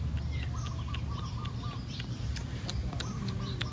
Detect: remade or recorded recorded